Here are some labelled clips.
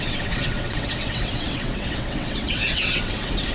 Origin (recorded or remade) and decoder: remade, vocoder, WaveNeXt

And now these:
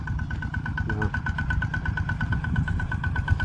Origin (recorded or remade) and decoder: recorded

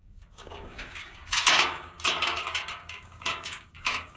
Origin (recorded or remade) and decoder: remade, codec, DAC